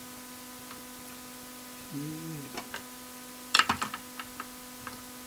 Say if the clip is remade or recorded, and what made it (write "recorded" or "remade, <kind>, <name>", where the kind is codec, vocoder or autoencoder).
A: recorded